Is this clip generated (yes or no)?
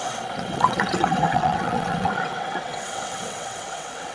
yes